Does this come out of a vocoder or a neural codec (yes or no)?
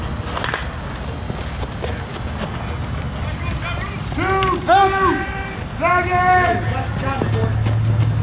no